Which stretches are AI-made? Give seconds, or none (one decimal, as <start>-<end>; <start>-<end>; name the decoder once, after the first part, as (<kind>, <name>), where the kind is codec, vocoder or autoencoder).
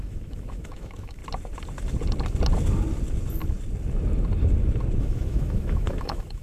0.0-1.2 (autoencoder, DAC-VAE); 5.0-6.4